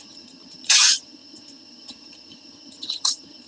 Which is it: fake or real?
fake